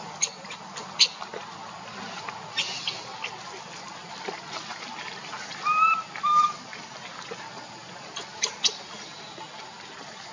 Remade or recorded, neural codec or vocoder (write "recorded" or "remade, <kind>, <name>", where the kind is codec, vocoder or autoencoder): recorded